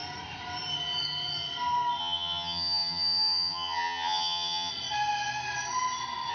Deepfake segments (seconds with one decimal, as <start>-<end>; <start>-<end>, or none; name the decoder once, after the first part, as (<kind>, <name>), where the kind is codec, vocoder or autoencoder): 2.0-4.7 (vocoder, HiFi-GAN)